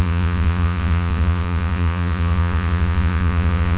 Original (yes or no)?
no